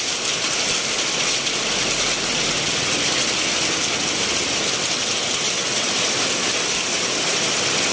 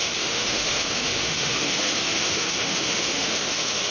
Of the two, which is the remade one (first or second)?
second